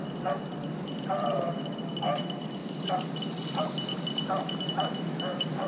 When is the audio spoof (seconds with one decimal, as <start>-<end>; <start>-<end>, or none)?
2.6-3.2

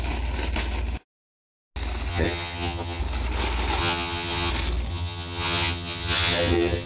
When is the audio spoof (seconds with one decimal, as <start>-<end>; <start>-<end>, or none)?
2.1-3.0; 3.8-4.5; 4.9-6.9

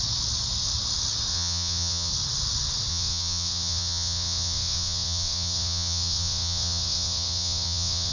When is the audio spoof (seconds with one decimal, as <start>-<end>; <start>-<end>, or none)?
1.3-2.1; 2.9-8.1

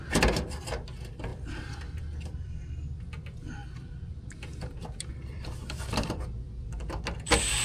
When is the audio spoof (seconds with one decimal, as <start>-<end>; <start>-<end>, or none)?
3.6-7.0